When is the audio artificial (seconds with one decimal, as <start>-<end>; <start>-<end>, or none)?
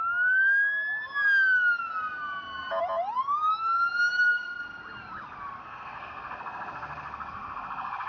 5.6-8.1